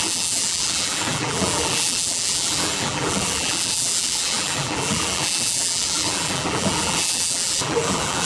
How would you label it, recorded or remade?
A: remade